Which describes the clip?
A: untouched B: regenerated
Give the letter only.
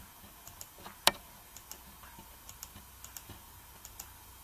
A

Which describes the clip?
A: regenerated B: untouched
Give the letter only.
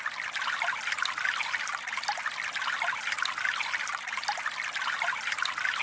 B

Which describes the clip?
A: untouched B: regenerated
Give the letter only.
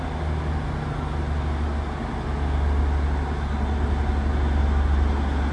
A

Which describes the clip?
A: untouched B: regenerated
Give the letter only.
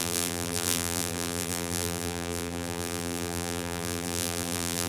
B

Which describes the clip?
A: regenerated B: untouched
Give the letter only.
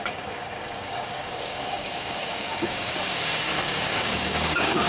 A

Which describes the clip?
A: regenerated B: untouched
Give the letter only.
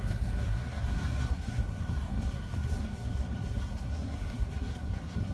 A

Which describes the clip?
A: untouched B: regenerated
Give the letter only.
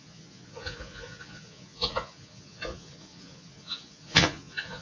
B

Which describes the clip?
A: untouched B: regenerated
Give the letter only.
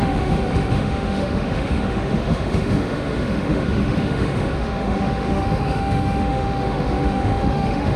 B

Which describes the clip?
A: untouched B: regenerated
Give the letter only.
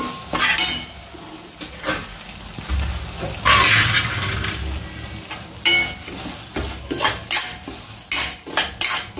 A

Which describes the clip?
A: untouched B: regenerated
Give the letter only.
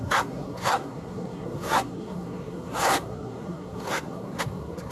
B